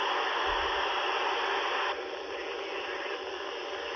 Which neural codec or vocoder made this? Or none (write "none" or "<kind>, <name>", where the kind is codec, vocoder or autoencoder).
none